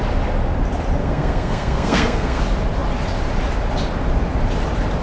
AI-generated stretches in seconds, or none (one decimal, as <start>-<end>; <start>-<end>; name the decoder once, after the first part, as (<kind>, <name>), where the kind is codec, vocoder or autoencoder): 1.0-2.4 (codec, SNAC)